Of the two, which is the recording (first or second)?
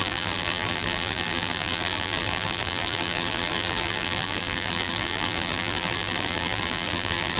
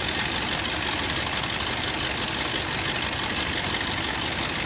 second